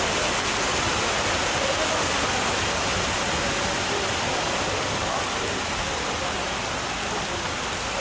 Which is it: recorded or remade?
recorded